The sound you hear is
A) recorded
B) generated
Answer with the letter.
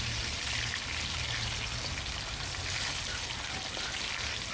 A